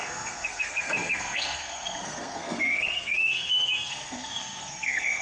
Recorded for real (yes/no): no